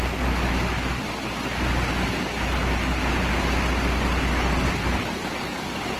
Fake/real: real